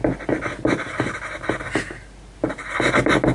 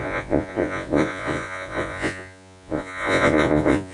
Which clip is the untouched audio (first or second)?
first